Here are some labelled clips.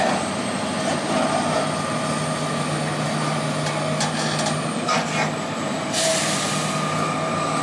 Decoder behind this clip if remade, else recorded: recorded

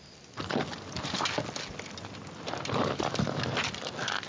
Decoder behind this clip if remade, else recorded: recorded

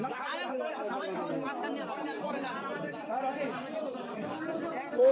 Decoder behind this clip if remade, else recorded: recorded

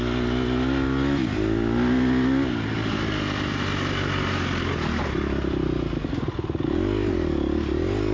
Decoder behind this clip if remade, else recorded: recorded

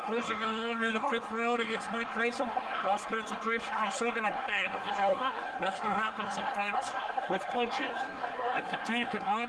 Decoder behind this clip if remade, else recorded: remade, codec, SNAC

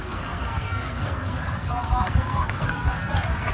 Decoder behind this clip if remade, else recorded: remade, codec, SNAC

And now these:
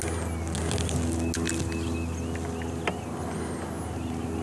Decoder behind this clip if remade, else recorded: recorded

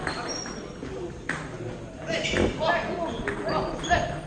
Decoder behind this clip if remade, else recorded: recorded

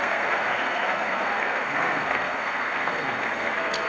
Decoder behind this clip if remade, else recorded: remade, codec, SNAC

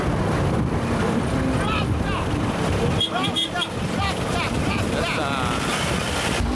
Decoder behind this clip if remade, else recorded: recorded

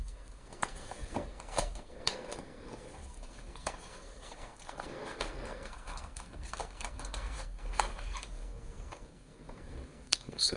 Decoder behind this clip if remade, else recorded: remade, codec, SNAC